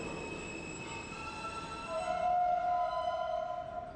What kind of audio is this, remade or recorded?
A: recorded